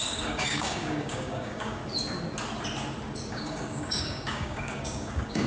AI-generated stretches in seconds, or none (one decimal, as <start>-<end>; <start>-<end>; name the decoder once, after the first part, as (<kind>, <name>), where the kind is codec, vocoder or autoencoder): 0.0-1.8 (codec, DAC); 3.3-5.5